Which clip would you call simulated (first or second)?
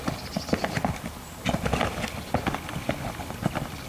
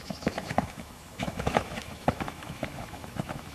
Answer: second